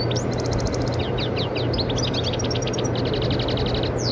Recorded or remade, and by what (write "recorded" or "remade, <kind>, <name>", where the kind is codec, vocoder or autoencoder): recorded